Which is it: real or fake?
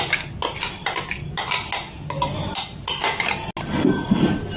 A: real